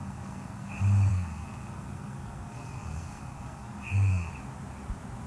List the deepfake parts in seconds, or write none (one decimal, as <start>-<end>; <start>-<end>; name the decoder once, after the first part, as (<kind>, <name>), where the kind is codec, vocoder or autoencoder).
0.0-0.7 (codec, SNAC); 1.1-4.3